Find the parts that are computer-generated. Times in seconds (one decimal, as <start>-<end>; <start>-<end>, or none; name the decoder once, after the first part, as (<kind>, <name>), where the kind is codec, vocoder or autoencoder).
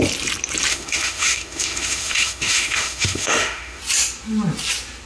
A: 0.7-3.8 (autoencoder, DAC-VAE)